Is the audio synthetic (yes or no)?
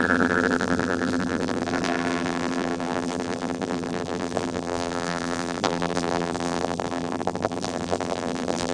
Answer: yes